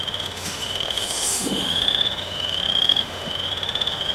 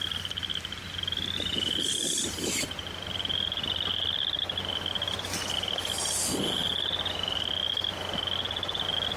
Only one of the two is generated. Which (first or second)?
first